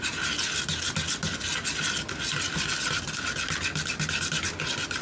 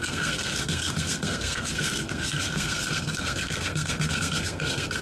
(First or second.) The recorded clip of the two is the first